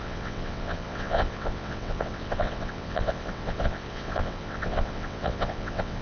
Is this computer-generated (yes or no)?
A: yes